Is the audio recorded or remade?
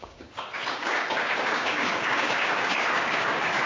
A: remade